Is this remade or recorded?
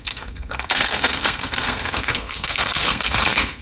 remade